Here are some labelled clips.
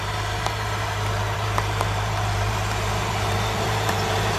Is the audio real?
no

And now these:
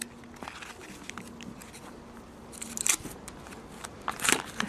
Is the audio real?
yes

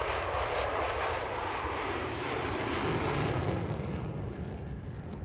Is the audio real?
no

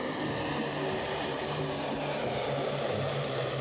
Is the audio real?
no